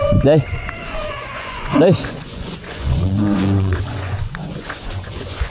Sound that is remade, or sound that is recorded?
remade